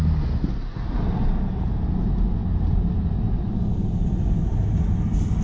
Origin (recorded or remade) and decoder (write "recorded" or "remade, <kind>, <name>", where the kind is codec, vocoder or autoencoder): recorded